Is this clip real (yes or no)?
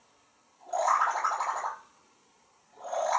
yes